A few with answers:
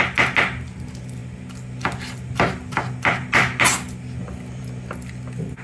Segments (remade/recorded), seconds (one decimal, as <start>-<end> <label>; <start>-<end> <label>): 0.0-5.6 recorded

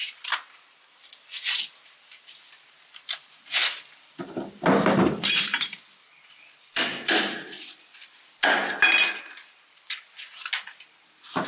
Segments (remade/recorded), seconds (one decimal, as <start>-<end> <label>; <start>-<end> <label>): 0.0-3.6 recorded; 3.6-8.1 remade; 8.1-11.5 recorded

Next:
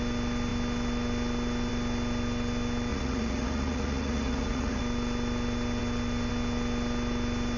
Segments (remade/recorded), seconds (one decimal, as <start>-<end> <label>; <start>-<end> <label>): 0.0-2.9 recorded; 2.9-4.8 remade; 4.8-7.6 recorded

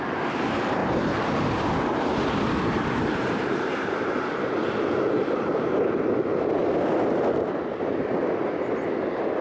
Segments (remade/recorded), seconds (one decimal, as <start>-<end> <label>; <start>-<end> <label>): 0.0-0.8 recorded; 0.8-4.5 remade; 4.5-9.4 recorded

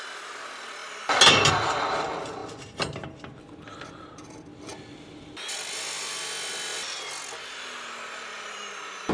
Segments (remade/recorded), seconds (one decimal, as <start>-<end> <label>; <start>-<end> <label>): 0.0-9.1 recorded